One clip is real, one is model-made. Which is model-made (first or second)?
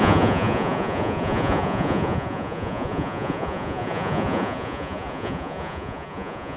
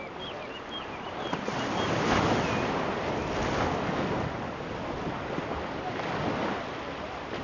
first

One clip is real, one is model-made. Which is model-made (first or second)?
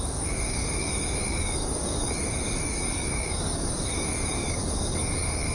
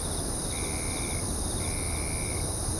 first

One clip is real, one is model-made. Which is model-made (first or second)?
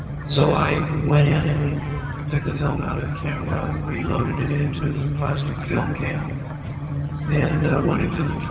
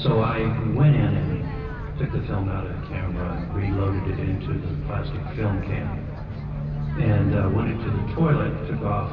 first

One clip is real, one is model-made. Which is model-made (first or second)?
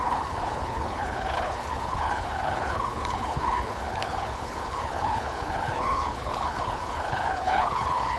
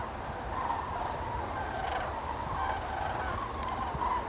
first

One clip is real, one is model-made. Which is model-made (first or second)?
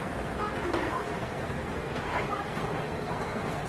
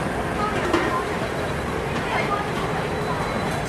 first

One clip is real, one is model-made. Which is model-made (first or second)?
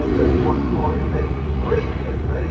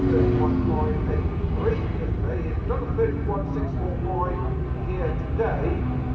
first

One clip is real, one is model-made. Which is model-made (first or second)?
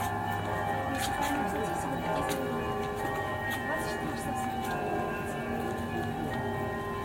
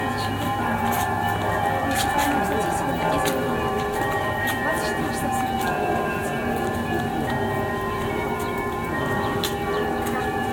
second